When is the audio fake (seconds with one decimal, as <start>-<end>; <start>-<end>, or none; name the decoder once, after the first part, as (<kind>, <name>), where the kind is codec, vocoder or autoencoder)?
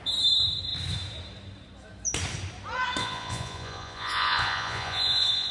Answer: 3.0-5.5 (vocoder, Vocos)